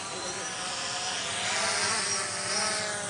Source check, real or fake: real